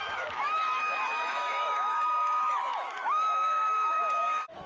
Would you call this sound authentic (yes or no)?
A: no